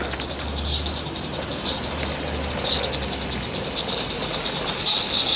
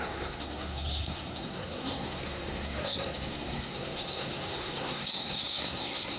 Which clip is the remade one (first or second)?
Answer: second